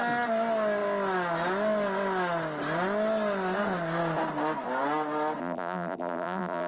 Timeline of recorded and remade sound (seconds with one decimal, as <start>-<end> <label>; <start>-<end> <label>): 0.0-5.4 recorded; 5.4-6.7 remade